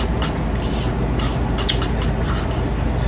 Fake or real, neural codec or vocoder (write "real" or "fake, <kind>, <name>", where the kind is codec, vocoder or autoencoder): real